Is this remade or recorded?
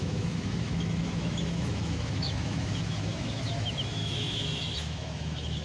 remade